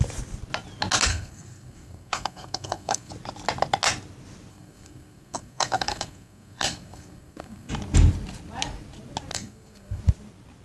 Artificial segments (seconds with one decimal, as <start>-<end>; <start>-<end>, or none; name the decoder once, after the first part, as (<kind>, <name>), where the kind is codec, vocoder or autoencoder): 1.1-3.1 (codec, SNAC); 4.5-7.7; 9.3-10.0